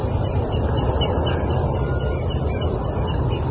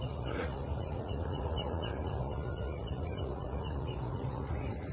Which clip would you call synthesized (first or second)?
second